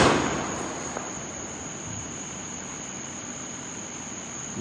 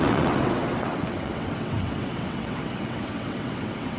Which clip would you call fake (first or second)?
second